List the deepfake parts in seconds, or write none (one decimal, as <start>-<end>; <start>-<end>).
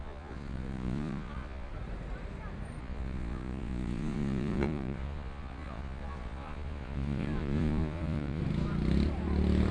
0.0-1.7; 2.8-8.4